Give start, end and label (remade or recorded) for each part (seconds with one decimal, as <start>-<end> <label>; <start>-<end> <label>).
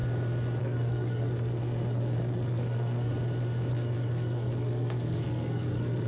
0.0-0.6 recorded; 0.6-3.1 remade; 3.1-3.7 recorded; 3.7-6.1 remade